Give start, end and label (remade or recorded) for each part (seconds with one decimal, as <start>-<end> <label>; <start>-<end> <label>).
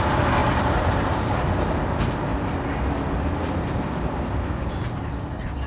0.0-0.4 recorded; 0.4-1.3 remade; 1.3-5.7 recorded